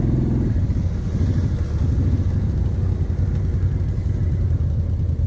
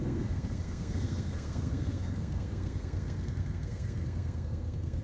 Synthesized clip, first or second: second